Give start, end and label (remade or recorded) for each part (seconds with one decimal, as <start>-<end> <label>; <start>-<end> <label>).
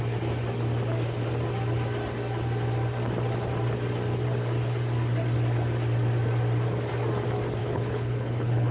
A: 0.0-7.6 recorded; 7.6-8.7 remade